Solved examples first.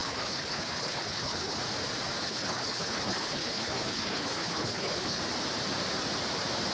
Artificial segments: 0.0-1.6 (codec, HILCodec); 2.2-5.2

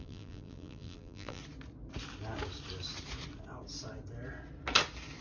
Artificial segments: 0.0-1.4 (vocoder, BigVGAN v2)

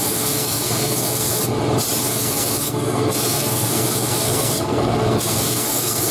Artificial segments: 0.0-1.4 (codec, SNAC); 2.0-6.1

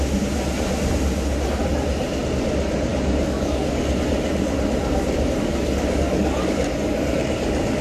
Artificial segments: 2.9-3.8 (codec, DAC); 4.8-7.8

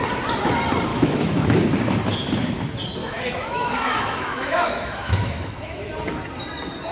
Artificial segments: 0.9-1.6 (autoencoder, DAC-VAE); 3.0-5.9

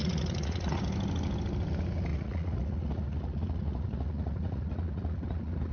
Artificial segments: 0.0-0.8 (vocoder, Vocos); 2.1-5.7

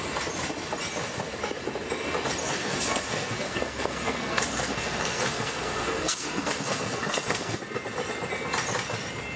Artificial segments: 2.4-7.6 (codec, SNAC)

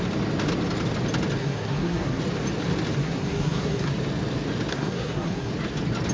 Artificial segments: 1.4-2.2 (codec, SNAC); 3.0-3.9; 4.7-5.5